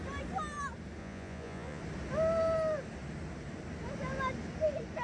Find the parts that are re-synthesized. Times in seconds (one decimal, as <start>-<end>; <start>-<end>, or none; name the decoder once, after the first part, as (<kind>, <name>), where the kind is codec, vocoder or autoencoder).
1.0-1.8 (vocoder, Vocos)